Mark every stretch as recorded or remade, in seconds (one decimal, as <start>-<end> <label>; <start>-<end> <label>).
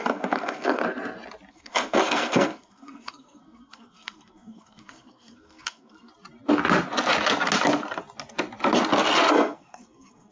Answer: 0.0-0.8 remade; 0.8-1.5 recorded; 1.5-6.1 remade; 6.1-9.3 recorded; 9.3-10.3 remade